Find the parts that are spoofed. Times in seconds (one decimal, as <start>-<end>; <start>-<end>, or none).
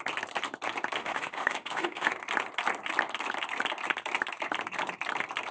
1.0-2.1